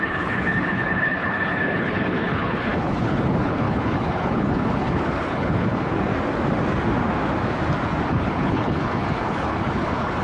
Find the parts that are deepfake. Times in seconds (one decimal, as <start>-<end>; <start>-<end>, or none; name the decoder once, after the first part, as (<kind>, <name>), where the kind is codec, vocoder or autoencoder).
0.0-6.1 (codec, HILCodec); 8.1-10.2